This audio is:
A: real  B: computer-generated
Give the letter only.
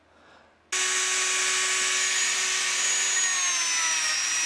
A